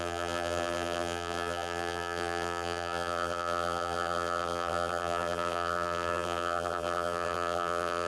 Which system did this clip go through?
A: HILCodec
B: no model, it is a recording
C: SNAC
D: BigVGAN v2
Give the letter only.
D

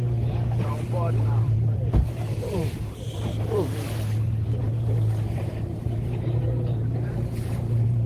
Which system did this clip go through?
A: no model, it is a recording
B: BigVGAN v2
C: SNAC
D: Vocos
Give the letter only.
B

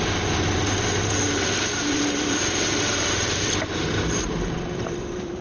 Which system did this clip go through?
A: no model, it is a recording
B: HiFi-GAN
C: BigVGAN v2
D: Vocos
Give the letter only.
C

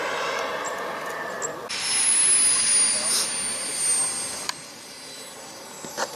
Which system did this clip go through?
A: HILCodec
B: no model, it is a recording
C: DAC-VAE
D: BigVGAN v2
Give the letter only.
B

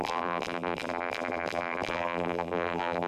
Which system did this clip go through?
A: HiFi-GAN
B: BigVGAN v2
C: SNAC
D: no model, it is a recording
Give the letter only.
B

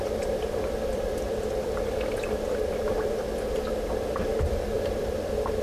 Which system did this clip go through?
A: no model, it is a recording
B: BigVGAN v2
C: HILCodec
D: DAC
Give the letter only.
B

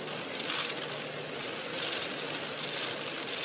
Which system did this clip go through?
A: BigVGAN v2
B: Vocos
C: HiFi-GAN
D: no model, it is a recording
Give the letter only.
D